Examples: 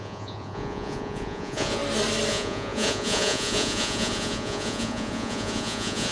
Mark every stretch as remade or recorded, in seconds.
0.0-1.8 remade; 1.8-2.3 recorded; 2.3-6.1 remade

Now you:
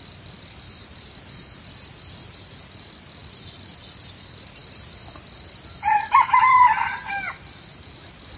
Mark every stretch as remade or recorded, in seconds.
0.0-8.4 recorded

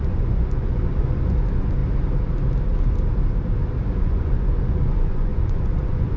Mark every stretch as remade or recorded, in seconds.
0.0-1.8 remade; 1.8-4.0 recorded; 4.0-6.2 remade

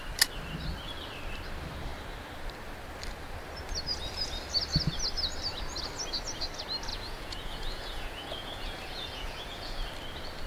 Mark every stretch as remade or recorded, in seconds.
0.0-6.9 recorded; 6.9-9.9 remade; 9.9-10.5 recorded

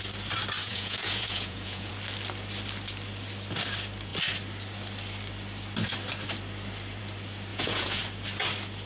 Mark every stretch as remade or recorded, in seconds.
0.0-0.6 recorded; 0.6-1.9 remade; 1.9-7.5 recorded; 7.5-8.0 remade; 8.0-8.9 recorded

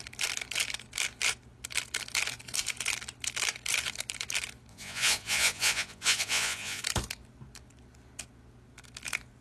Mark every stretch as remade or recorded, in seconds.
0.0-4.7 recorded; 4.7-6.8 remade; 6.8-9.4 recorded